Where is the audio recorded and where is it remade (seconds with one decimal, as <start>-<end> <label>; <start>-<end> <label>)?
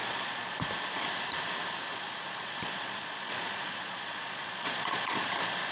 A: 0.0-0.5 remade; 0.5-1.9 recorded; 1.9-5.3 remade; 5.3-5.7 recorded